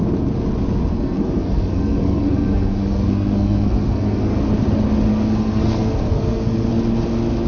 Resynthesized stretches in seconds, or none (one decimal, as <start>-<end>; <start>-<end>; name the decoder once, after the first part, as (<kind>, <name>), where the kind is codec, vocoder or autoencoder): 0.9-4.4 (codec, SNAC); 5.1-6.7